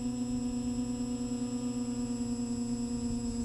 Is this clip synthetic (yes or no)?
no